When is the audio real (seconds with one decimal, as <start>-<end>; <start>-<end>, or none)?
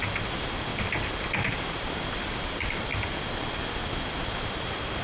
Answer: 0.7-1.5; 2.9-4.3